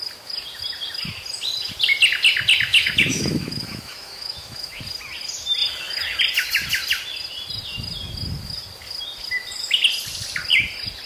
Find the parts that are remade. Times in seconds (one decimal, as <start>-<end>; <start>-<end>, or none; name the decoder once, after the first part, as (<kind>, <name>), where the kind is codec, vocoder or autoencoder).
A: 2.7-4.8 (autoencoder, DAC-VAE)